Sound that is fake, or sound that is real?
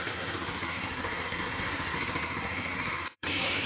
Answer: fake